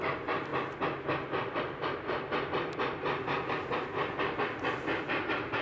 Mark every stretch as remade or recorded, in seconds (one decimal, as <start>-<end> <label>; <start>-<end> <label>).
0.0-5.6 recorded